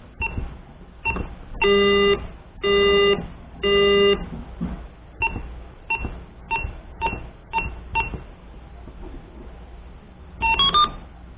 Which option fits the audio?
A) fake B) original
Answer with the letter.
B